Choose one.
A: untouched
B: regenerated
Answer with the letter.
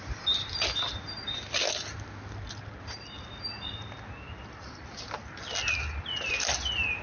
A